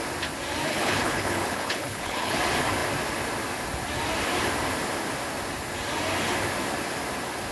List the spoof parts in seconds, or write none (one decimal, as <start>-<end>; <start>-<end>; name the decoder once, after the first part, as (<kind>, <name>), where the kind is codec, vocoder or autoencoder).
0.7-2.4 (codec, HILCodec)